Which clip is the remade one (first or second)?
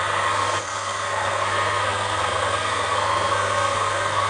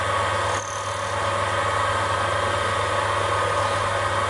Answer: first